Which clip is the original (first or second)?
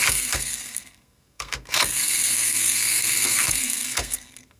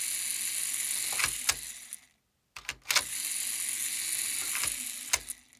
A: second